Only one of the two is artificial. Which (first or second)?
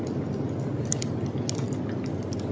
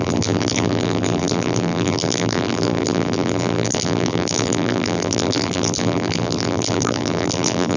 second